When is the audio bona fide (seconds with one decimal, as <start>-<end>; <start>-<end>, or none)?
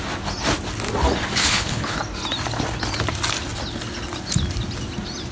0.0-1.4; 2.0-5.3